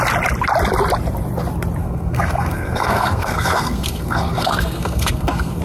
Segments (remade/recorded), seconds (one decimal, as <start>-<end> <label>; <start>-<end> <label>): 0.0-1.8 recorded; 1.8-5.6 remade